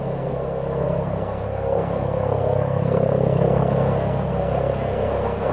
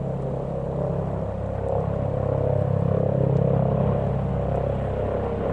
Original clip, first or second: second